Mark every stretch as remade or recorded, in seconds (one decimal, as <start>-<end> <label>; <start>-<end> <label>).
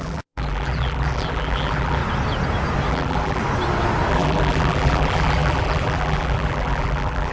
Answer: 0.0-2.0 remade; 2.0-2.9 recorded; 2.9-3.4 remade; 3.4-4.1 recorded; 4.1-7.3 remade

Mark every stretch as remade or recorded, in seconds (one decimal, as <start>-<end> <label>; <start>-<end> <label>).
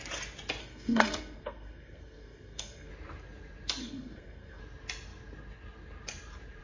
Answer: 0.0-0.6 recorded; 0.6-2.9 remade; 2.9-3.8 recorded; 3.8-4.6 remade; 4.6-6.6 recorded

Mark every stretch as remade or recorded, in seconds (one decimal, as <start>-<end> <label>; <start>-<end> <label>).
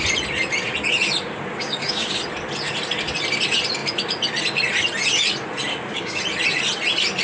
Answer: 0.0-1.5 recorded; 1.5-2.2 remade; 2.2-5.7 recorded; 5.7-6.2 remade; 6.2-7.2 recorded